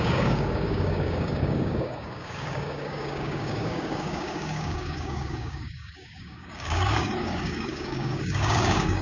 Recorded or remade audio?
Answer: remade